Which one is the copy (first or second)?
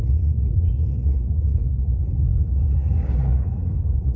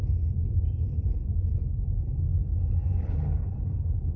first